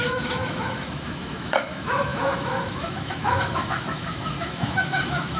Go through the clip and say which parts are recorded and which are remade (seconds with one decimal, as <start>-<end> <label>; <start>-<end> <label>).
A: 0.0-5.4 remade